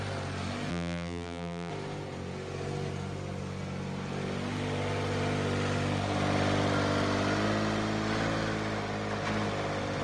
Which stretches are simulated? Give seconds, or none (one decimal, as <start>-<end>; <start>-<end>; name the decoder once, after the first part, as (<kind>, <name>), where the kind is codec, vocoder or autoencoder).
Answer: 0.7-1.7 (vocoder, BigVGAN v2)